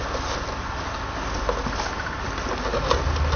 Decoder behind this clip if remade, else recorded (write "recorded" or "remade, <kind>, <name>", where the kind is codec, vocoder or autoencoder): recorded